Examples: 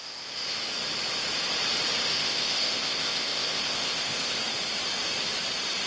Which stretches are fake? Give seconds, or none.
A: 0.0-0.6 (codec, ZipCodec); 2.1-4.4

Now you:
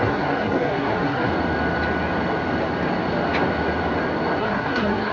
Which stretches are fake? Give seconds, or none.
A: 0.0-1.3 (codec, SNAC); 4.4-5.1

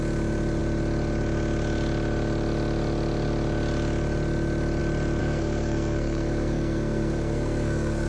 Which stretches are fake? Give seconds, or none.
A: 5.2-8.1 (codec, SNAC)

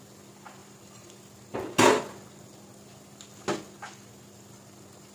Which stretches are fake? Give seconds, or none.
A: none

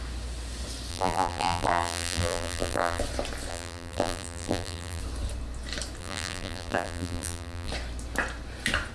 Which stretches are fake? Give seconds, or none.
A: 0.9-3.0 (vocoder, BigVGAN v2); 3.5-5.0; 6.0-7.7

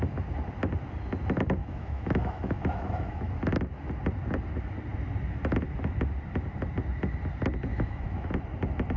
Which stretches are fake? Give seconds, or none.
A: 1.6-3.3 (autoencoder, DAC-VAE); 7.7-8.3

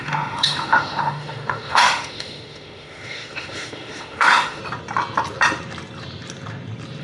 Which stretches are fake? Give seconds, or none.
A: 0.0-4.6 (autoencoder, DAC-VAE)

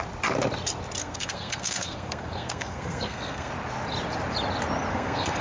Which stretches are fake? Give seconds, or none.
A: 1.0-3.5 (codec, SNAC); 4.9-5.4